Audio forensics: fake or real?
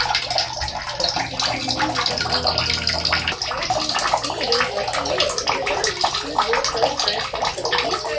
real